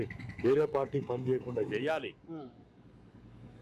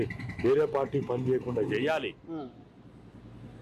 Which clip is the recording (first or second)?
second